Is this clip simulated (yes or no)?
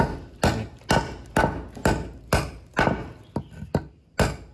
no